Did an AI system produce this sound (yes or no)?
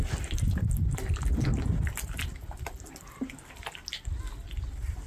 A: no